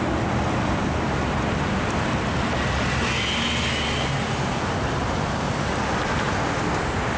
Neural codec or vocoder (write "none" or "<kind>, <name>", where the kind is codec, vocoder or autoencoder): none